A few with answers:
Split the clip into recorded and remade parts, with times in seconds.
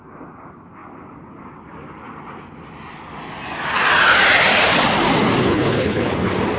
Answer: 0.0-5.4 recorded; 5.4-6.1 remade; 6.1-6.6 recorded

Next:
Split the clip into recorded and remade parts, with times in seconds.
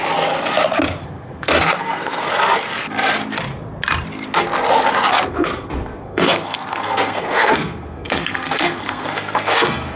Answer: 0.0-1.0 recorded; 1.0-2.3 remade; 2.3-5.1 recorded; 5.1-10.0 remade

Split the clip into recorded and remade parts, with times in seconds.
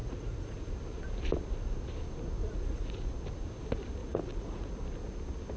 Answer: 0.0-0.7 remade; 0.7-2.4 recorded; 2.4-3.1 remade; 3.1-4.0 recorded; 4.0-4.7 remade; 4.7-5.6 recorded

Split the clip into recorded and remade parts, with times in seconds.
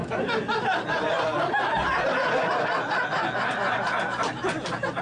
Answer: 0.0-5.0 recorded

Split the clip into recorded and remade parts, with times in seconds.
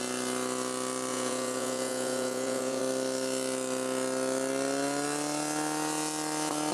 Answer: 0.0-1.1 recorded; 1.1-2.8 remade; 2.8-6.7 recorded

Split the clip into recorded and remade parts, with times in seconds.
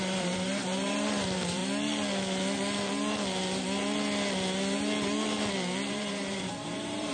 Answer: 0.0-1.6 remade; 1.6-5.9 recorded; 5.9-7.1 remade